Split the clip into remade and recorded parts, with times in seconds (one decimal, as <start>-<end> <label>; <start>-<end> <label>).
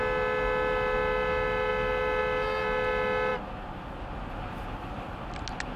0.0-5.8 recorded